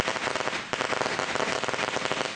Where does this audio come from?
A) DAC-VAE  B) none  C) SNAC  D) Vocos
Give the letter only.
B